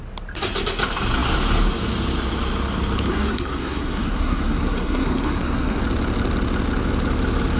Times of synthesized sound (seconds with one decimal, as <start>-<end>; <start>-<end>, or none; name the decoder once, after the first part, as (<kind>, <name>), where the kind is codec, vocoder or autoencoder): 3.1-5.8 (codec, SNAC)